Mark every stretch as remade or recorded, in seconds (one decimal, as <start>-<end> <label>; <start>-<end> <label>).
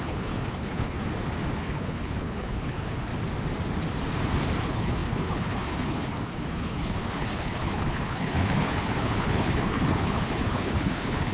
0.0-1.0 remade; 1.0-1.6 recorded; 1.6-3.1 remade; 3.1-4.6 recorded; 4.6-11.3 remade